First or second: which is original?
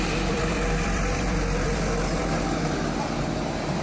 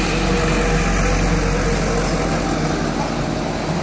second